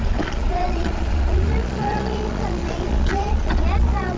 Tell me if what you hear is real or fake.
fake